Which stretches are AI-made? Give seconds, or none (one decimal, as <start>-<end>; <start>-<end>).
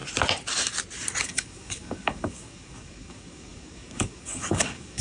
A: 1.2-5.0